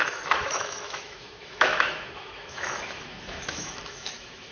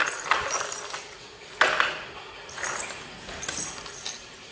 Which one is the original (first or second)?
second